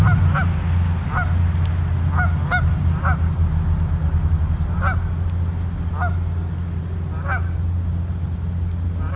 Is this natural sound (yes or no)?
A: yes